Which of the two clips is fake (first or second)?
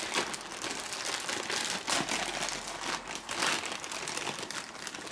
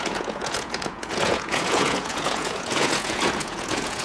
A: second